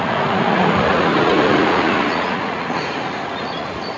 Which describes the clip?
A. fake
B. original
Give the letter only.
A